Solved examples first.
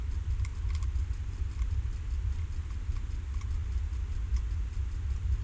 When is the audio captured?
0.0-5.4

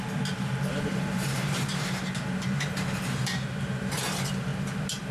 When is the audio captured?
0.0-0.9; 4.0-5.1